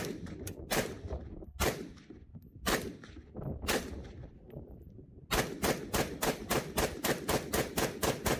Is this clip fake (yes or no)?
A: no